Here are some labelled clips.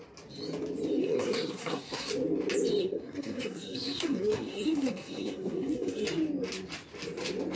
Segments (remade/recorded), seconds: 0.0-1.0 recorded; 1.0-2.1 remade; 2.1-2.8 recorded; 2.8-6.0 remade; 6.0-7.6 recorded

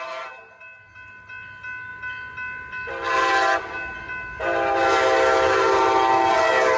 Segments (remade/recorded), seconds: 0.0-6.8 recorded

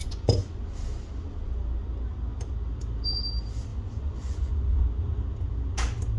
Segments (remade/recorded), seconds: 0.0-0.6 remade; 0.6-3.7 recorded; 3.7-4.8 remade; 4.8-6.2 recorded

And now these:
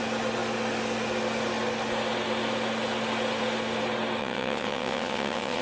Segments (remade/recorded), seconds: 0.0-4.2 recorded; 4.2-5.6 remade

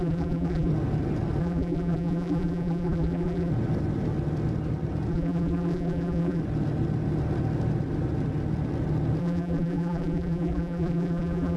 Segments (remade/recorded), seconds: 0.0-0.7 remade; 0.7-1.4 recorded; 1.4-3.5 remade; 3.5-5.1 recorded; 5.1-6.4 remade; 6.4-9.2 recorded; 9.2-11.6 remade